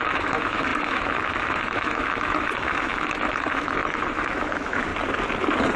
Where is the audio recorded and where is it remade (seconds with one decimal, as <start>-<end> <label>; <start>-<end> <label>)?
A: 0.0-4.9 remade; 4.9-5.8 recorded